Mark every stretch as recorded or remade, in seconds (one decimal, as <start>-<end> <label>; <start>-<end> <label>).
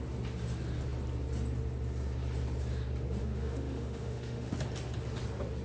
0.0-3.2 recorded; 3.2-4.5 remade; 4.5-5.6 recorded